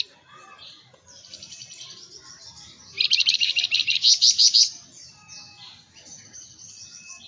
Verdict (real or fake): real